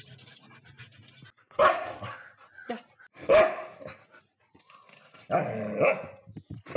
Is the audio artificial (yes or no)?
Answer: no